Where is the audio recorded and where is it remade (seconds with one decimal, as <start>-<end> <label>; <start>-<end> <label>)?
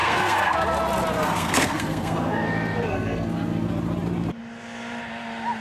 0.0-0.5 remade; 0.5-1.2 recorded; 1.2-3.7 remade; 3.7-5.6 recorded